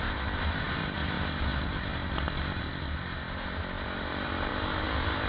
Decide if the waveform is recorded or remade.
recorded